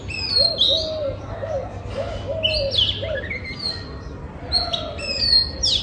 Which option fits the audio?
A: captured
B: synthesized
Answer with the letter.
A